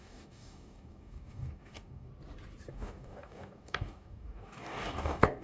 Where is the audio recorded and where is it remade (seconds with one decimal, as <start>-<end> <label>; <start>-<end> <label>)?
0.0-2.1 remade; 2.1-2.7 recorded; 2.7-5.4 remade